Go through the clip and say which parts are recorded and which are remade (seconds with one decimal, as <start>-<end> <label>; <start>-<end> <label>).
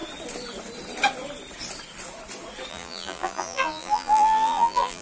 0.0-2.7 recorded; 2.7-5.0 remade